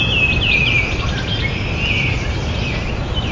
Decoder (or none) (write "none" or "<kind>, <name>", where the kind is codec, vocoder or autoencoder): none